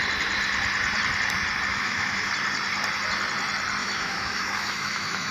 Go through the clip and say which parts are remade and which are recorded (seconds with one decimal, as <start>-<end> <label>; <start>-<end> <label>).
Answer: 0.0-1.7 recorded; 1.7-2.3 remade; 2.3-3.8 recorded; 3.8-5.3 remade